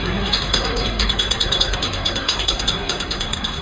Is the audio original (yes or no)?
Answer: no